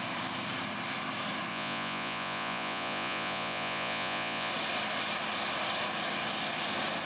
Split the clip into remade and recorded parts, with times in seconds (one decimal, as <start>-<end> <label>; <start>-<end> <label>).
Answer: 0.0-1.5 recorded; 1.5-4.5 remade; 4.5-7.1 recorded